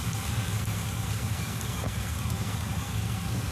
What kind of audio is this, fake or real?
fake